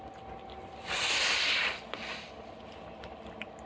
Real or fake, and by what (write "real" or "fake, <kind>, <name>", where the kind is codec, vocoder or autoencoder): real